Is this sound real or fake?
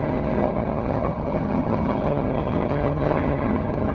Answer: fake